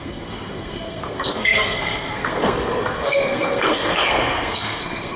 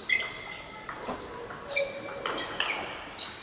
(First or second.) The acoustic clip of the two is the second